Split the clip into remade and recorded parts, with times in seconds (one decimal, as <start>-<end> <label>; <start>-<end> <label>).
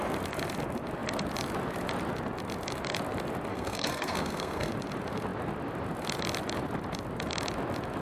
0.0-3.5 recorded; 3.5-4.7 remade; 4.7-8.0 recorded